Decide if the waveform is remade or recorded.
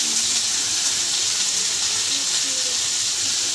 recorded